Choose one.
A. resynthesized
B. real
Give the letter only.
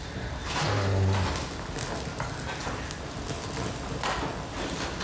B